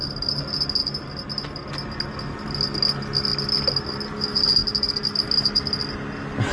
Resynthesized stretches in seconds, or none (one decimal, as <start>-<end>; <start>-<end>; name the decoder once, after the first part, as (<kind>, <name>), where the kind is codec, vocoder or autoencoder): none